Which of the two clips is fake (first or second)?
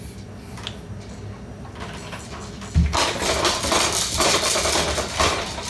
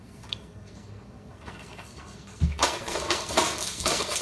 second